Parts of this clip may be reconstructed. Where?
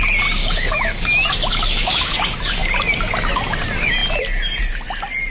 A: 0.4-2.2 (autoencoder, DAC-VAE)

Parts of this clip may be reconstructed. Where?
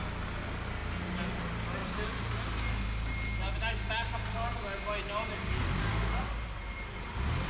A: none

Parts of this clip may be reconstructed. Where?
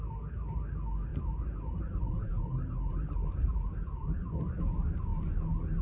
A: 1.1-4.6 (vocoder, BigVGAN v2)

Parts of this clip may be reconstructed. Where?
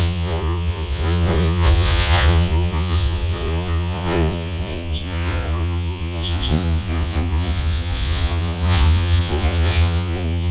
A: 0.0-10.5 (vocoder, Vocos)